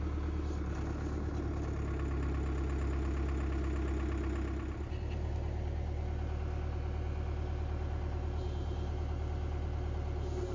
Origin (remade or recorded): recorded